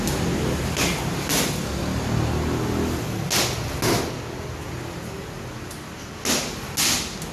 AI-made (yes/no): no